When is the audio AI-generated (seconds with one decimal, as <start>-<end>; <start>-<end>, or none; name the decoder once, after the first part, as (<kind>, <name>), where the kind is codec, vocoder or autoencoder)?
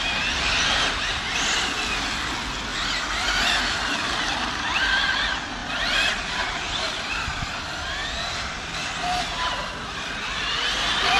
none